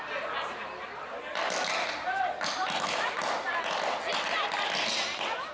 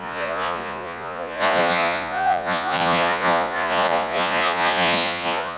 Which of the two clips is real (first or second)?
first